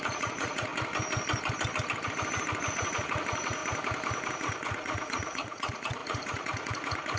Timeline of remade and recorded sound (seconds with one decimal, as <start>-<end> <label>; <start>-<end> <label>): 0.0-0.7 remade; 0.7-2.7 recorded; 2.7-3.6 remade; 3.6-4.3 recorded; 4.3-7.2 remade